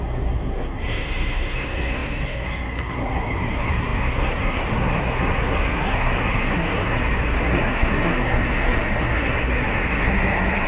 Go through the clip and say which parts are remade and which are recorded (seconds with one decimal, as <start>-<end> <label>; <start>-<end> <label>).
0.0-10.7 remade